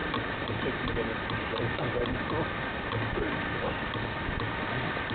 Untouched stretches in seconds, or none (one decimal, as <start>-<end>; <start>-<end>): 2.2-5.1